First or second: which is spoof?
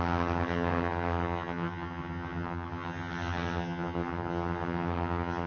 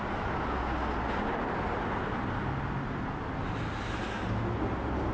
first